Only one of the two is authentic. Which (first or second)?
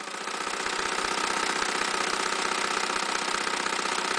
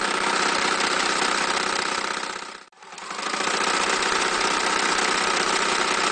first